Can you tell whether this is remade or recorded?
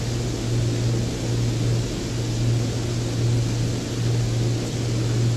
recorded